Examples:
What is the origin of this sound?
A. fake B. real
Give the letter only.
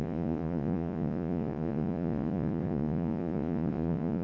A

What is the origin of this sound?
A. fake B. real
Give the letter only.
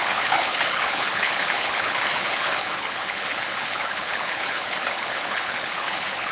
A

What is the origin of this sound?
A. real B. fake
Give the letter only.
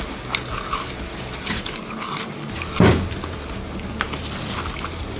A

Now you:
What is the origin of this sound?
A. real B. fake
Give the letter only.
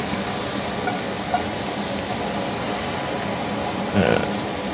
A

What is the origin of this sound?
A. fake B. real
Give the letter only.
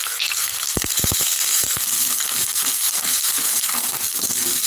A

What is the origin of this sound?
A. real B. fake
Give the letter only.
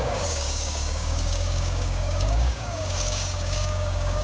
B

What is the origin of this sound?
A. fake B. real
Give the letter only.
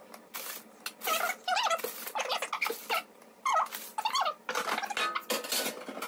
B